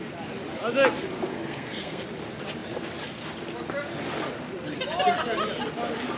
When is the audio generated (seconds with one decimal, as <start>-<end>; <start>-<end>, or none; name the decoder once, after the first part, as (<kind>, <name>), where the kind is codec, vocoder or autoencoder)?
1.3-2.0 (codec, SNAC)